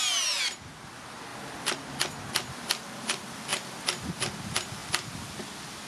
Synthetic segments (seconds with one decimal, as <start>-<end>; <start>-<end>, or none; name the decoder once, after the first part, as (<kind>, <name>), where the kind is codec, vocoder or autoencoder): none